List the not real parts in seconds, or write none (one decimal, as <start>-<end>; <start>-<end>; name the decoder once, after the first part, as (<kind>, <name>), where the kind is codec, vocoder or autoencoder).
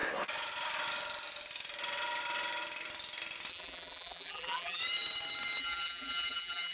3.5-4.8 (vocoder, BigVGAN v2); 5.6-6.7